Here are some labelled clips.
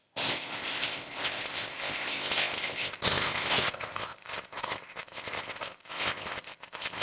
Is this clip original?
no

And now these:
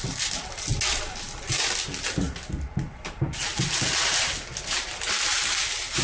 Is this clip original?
yes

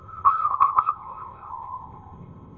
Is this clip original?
no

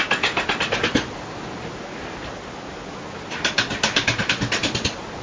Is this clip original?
yes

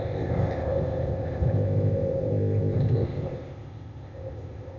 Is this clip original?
no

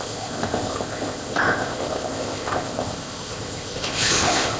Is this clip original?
no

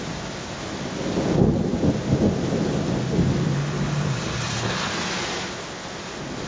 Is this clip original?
yes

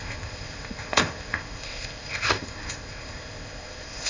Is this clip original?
no